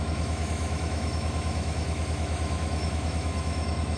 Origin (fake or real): fake